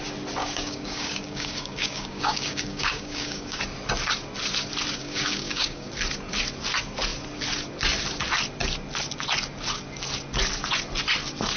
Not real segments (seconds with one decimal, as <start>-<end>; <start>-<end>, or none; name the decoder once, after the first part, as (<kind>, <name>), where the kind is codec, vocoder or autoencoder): 0.4-3.6 (codec, DAC); 5.0-5.9